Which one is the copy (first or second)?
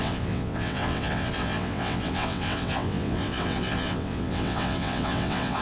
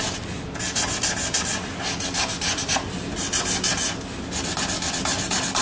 first